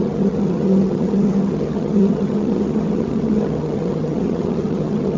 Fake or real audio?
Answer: fake